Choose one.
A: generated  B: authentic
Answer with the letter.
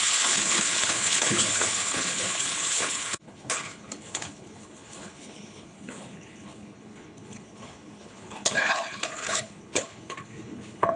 A